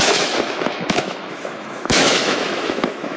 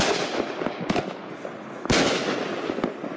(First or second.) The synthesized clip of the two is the first